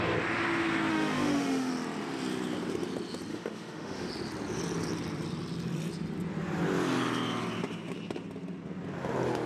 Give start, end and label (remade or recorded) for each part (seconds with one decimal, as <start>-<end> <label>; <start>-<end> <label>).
0.0-0.9 recorded; 0.9-1.7 remade; 1.7-3.3 recorded; 3.3-4.1 remade; 4.1-9.5 recorded